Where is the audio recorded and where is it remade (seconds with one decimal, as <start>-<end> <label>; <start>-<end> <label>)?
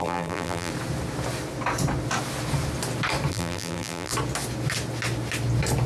0.0-0.7 remade; 0.7-3.3 recorded; 3.3-4.1 remade; 4.1-5.9 recorded